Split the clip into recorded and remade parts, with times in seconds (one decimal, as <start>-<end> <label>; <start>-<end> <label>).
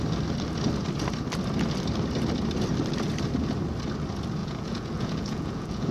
0.0-4.4 recorded; 4.4-5.9 remade